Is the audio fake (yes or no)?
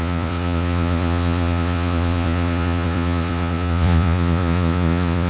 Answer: yes